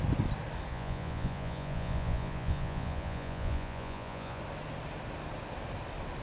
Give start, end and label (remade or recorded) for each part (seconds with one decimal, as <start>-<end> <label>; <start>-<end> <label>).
0.0-0.7 recorded; 0.7-4.4 remade; 4.4-6.2 recorded